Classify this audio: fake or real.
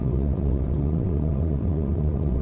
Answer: fake